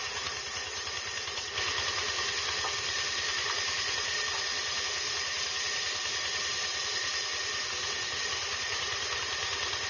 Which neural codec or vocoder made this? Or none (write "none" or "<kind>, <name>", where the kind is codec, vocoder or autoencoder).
none